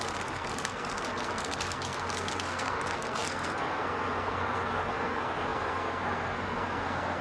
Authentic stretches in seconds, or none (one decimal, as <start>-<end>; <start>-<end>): none